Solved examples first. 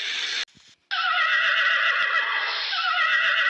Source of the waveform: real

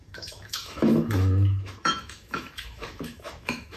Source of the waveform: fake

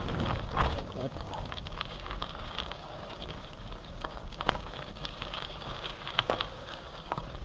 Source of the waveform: fake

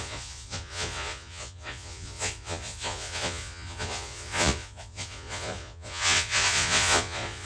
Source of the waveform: fake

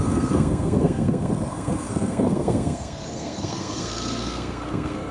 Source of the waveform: fake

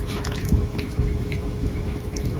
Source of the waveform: fake